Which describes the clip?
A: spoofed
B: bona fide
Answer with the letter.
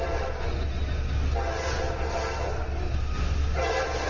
B